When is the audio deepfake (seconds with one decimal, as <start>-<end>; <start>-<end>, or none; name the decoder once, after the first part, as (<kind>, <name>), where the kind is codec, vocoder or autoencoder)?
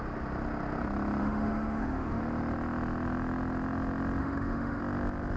1.2-2.2 (autoencoder, DAC-VAE); 4.2-4.8